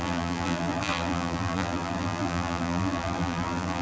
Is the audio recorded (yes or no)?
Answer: no